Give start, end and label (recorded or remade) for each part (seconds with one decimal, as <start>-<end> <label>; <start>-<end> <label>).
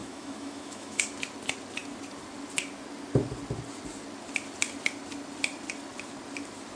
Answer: 0.0-1.0 remade; 1.0-6.8 recorded